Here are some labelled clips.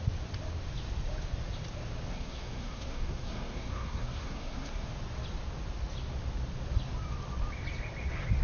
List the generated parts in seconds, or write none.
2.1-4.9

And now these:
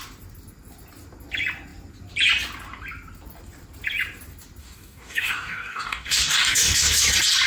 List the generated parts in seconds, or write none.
4.6-7.0

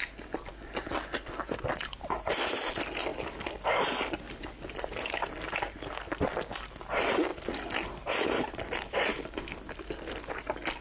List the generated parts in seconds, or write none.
3.1-4.1; 7.3-10.3

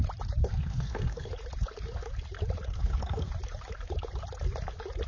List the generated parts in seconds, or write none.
0.4-1.3; 2.7-3.3

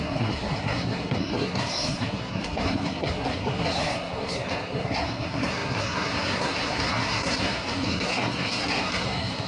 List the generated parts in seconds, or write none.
0.0-9.5

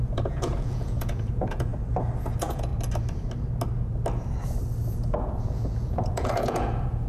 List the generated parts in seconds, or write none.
0.0-1.7; 2.2-2.7; 4.9-7.1

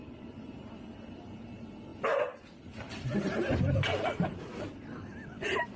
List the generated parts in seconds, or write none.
0.0-5.8

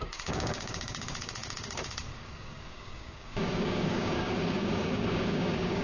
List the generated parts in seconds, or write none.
0.0-5.8